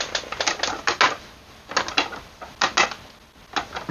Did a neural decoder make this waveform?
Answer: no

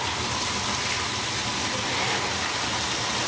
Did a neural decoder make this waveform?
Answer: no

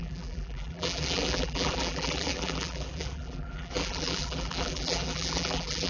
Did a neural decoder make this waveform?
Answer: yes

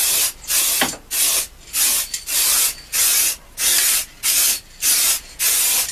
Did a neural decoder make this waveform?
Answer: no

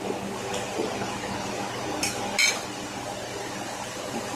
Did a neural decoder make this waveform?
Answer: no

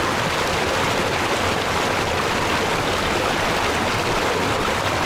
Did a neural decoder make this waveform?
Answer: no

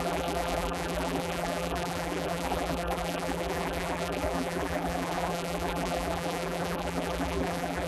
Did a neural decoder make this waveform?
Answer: yes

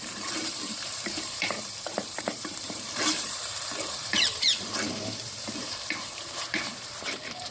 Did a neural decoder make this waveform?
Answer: yes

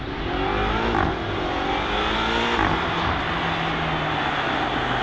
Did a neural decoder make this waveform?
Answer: no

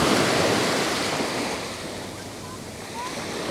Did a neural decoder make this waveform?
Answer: no